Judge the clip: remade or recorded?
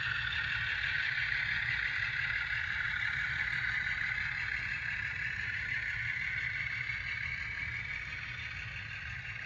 recorded